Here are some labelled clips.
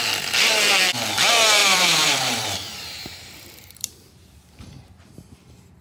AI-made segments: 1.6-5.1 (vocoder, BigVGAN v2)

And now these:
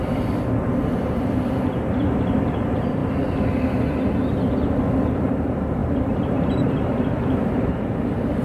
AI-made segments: 0.0-3.0 (vocoder, BigVGAN v2); 5.2-8.4

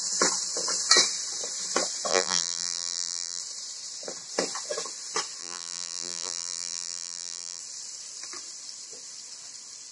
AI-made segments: 2.1-3.4 (vocoder, BigVGAN v2); 5.4-7.6

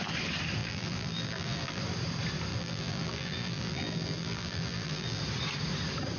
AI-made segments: 0.6-1.8 (vocoder, BigVGAN v2); 2.5-5.2